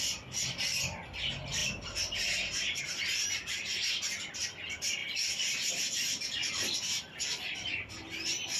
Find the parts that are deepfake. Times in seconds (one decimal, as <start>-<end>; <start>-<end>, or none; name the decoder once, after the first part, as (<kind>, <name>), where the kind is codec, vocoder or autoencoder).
6.4-7.0 (vocoder, BigVGAN v2)